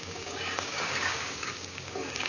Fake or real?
fake